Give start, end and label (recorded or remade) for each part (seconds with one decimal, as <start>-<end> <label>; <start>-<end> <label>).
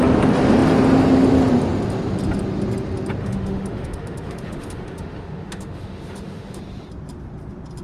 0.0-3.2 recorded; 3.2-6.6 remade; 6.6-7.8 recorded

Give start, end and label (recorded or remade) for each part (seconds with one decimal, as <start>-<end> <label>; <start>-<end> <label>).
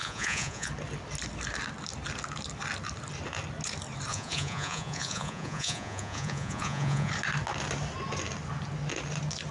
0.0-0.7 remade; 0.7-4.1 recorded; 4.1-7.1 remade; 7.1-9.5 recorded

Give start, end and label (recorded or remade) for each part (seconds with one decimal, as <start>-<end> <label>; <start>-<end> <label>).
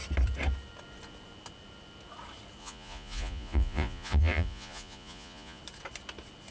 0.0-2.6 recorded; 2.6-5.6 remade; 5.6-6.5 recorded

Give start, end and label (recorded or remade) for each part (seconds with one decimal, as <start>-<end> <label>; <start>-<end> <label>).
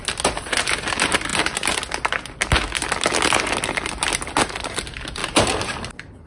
0.0-6.3 recorded